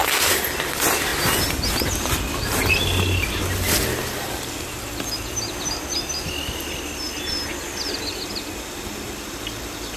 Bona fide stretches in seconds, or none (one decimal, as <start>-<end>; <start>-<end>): 0.0-10.0

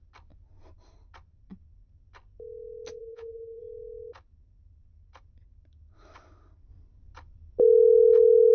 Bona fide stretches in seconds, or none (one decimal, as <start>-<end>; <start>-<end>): 0.0-3.0; 3.6-8.5

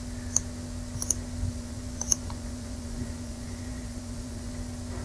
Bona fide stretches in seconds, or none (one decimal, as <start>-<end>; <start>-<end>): 0.0-1.5; 4.5-5.0

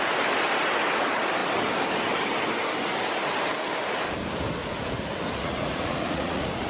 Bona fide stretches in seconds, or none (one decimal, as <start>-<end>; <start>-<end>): 0.0-4.6

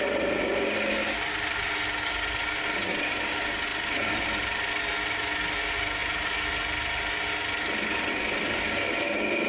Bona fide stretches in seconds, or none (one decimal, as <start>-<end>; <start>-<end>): 0.0-9.5

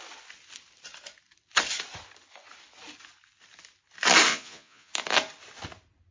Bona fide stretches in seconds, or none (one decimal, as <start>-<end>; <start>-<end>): 0.0-4.3; 4.9-6.1